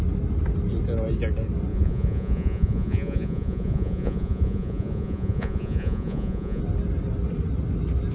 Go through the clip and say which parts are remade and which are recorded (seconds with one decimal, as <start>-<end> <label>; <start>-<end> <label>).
0.0-1.7 recorded; 1.7-6.6 remade; 6.6-8.1 recorded